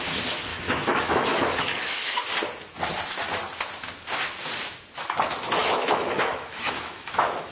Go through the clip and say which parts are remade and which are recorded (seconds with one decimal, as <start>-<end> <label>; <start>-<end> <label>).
0.0-0.5 recorded; 0.5-2.2 remade; 2.2-5.6 recorded; 5.6-7.5 remade